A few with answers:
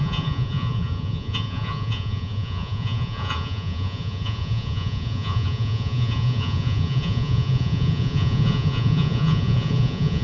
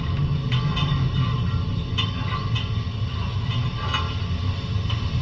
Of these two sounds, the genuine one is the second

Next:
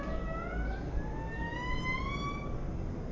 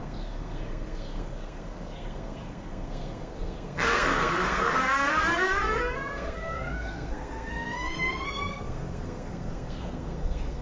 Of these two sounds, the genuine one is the first